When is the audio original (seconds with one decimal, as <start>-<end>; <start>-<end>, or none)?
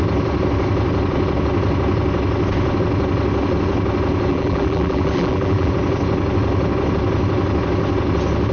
0.0-4.3; 5.7-8.5